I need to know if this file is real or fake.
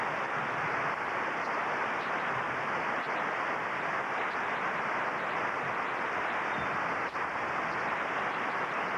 real